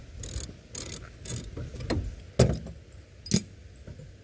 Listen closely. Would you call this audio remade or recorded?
recorded